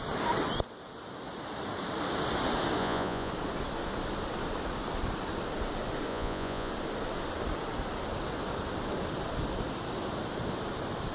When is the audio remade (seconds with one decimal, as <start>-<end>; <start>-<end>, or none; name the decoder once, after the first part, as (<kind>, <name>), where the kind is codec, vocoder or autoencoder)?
2.8-3.3 (vocoder, Vocos); 6.1-6.7